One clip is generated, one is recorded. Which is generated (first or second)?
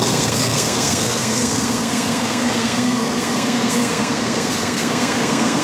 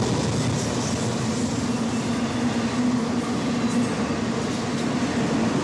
first